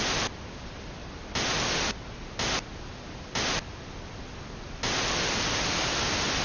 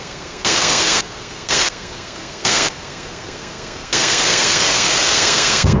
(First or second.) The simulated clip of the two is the second